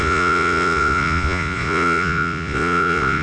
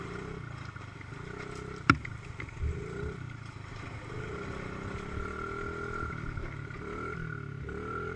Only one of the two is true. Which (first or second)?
second